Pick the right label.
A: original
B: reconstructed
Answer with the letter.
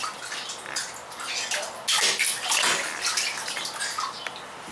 A